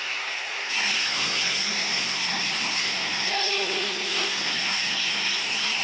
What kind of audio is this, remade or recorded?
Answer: remade